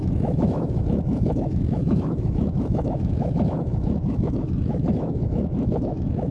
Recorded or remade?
remade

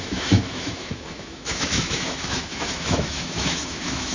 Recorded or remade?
remade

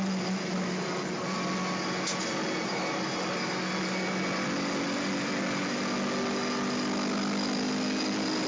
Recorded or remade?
recorded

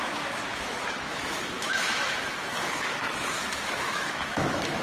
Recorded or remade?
remade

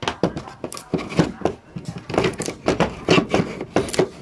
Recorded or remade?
recorded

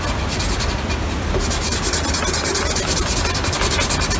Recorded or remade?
recorded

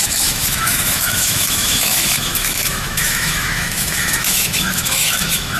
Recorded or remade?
remade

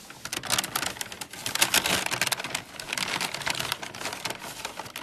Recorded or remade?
recorded